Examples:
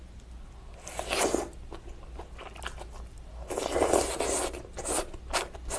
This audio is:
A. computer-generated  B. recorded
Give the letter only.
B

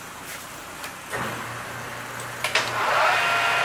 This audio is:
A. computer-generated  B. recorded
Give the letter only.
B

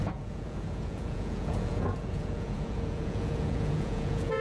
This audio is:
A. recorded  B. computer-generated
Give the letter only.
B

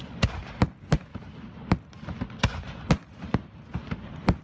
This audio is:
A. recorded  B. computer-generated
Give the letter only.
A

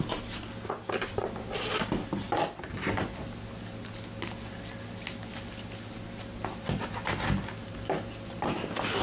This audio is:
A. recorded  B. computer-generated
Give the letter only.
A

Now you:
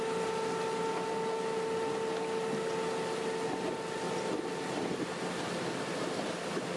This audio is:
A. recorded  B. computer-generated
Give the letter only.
A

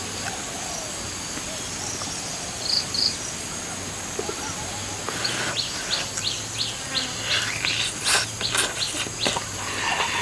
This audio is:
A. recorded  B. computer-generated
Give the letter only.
A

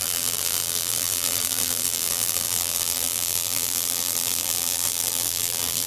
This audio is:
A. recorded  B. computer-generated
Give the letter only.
B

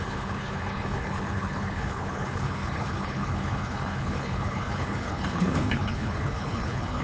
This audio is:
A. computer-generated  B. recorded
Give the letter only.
A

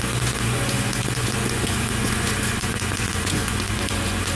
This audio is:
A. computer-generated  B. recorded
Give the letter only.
A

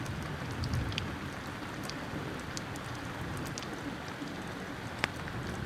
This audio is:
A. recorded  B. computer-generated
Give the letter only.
A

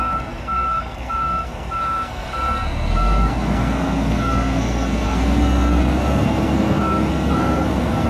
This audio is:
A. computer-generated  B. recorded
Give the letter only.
A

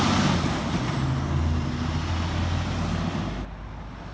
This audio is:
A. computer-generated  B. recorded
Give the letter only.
B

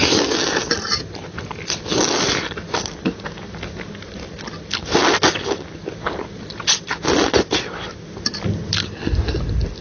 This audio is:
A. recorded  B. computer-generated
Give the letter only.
A